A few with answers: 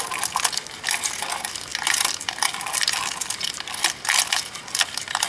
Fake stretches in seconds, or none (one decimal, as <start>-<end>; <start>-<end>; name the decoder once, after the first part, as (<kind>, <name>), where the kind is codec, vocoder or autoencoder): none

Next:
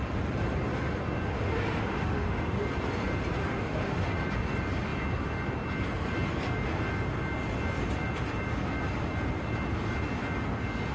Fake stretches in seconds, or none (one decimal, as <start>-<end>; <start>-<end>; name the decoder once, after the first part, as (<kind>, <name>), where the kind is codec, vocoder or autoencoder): 1.9-2.6 (autoencoder, DAC-VAE); 3.4-4.1

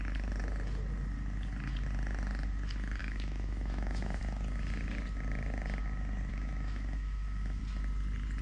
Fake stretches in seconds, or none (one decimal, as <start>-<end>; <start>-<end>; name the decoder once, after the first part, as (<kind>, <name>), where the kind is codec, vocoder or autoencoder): 3.0-4.2 (autoencoder, DAC-VAE); 6.3-7.6